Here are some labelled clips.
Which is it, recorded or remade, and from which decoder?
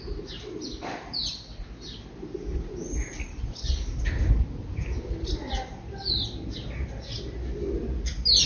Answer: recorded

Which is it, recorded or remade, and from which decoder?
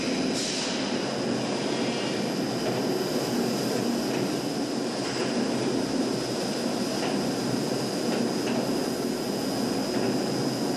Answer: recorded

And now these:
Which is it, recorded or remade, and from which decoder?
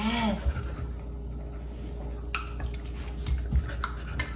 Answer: recorded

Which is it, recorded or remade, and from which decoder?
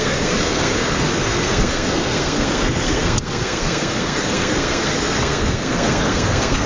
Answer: remade, codec, SNAC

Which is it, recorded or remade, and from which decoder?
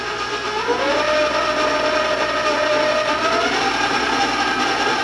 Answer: recorded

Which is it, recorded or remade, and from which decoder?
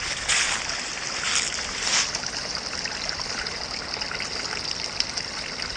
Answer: recorded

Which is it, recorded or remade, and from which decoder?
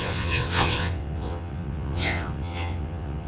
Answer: remade, vocoder, WaveNeXt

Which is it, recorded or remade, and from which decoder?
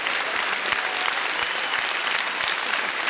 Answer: recorded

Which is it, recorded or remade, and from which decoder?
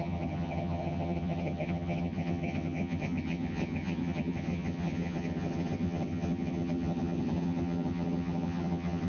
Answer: remade, vocoder, HiFi-GAN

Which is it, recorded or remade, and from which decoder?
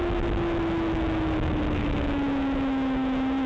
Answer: remade, autoencoder, DAC-VAE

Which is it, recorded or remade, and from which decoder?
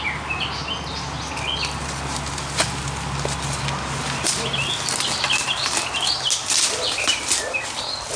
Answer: recorded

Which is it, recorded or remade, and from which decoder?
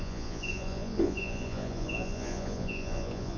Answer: remade, vocoder, Vocos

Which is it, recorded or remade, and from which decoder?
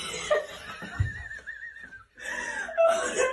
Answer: recorded